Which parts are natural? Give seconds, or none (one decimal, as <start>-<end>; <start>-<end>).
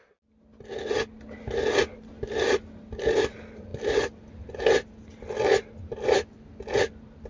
0.0-7.3